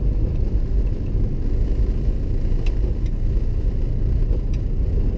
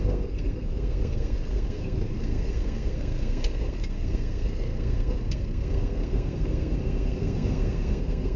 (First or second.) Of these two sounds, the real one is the first